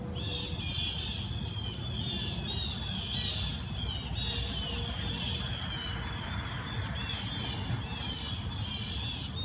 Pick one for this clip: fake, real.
real